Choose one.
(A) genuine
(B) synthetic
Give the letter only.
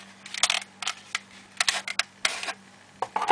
A